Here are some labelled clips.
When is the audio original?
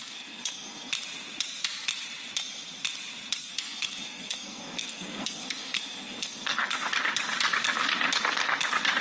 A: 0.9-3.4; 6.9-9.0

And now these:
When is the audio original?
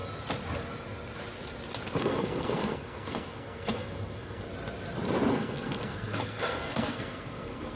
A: 0.0-2.0; 4.5-5.3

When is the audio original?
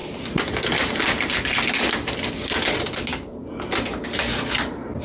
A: 0.0-5.0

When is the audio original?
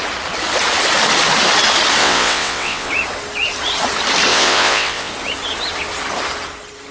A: 0.0-2.0; 2.9-4.3; 5.1-6.9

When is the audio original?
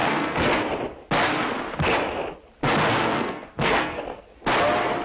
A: 0.5-3.0; 4.3-5.0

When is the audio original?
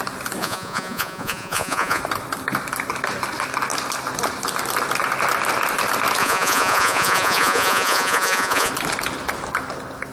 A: 0.0-0.4; 2.0-6.2; 8.7-10.1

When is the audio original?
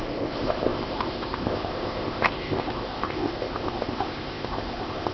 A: none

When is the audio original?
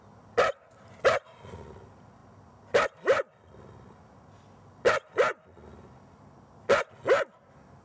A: 0.0-7.8